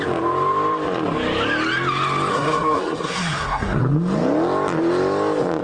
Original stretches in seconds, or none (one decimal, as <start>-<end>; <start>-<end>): 0.0-2.3; 3.8-5.6